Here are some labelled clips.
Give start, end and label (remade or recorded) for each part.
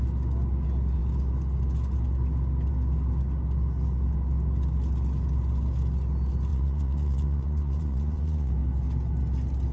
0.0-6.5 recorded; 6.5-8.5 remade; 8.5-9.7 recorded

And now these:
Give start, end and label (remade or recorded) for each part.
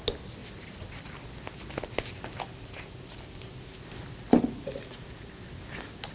0.0-4.4 recorded; 4.4-5.3 remade; 5.3-6.1 recorded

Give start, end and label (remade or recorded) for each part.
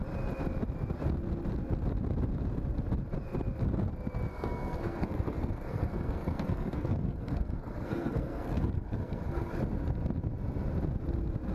0.0-4.3 recorded; 4.3-9.5 remade; 9.5-11.5 recorded